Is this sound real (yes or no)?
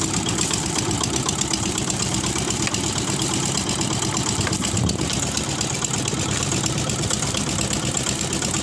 yes